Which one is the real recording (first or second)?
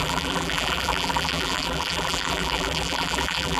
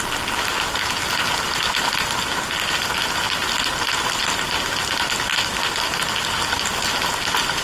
second